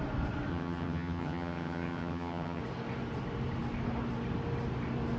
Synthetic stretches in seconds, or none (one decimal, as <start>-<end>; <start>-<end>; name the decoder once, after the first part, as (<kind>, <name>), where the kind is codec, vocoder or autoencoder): 0.5-2.6 (vocoder, HiFi-GAN)